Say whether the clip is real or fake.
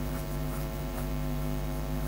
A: fake